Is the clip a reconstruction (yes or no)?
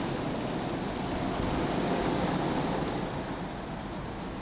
no